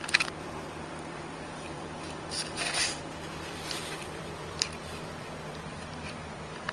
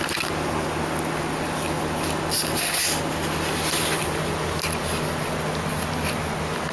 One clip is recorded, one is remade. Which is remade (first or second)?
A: first